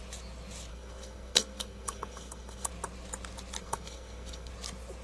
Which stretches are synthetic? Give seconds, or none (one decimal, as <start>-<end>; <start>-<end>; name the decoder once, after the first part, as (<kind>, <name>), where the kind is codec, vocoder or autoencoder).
0.7-2.7 (codec, SNAC); 3.6-4.5